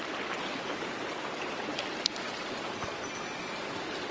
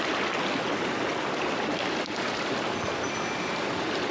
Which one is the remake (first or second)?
first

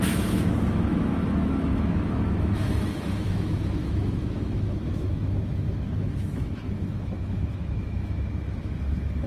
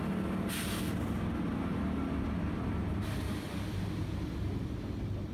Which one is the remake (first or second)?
first